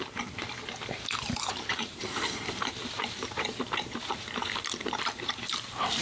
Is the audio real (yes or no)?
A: no